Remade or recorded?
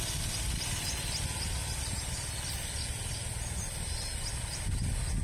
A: recorded